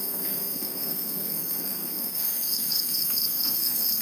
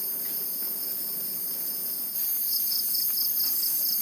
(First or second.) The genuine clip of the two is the second